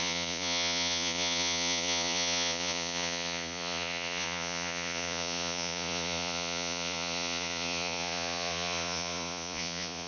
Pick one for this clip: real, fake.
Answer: fake